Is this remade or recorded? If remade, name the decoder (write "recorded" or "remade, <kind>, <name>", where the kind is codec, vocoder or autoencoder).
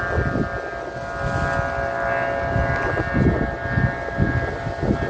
recorded